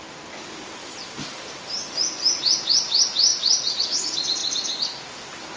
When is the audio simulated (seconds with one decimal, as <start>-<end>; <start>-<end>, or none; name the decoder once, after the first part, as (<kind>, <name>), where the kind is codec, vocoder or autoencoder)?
0.8-2.4 (vocoder, BigVGAN v2); 3.3-3.9